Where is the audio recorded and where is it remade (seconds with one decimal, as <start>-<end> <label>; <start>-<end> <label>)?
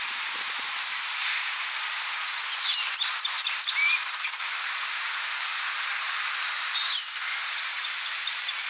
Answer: 0.0-5.9 remade; 5.9-6.8 recorded; 6.8-8.7 remade